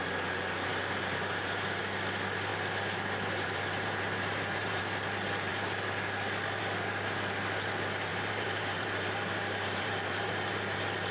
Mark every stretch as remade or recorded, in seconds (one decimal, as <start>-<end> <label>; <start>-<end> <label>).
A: 0.0-0.7 recorded; 0.7-1.8 remade; 1.8-2.5 recorded; 2.5-4.8 remade; 4.8-8.1 recorded; 8.1-10.5 remade; 10.5-11.1 recorded